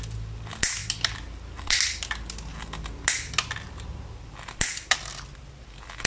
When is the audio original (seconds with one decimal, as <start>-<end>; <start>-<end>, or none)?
0.0-6.1